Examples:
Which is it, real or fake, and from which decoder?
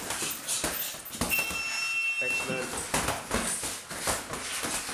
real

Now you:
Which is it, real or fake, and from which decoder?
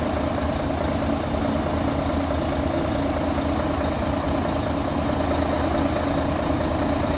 real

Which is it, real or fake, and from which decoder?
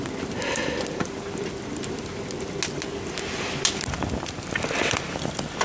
real